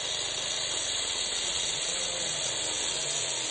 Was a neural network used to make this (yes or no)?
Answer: no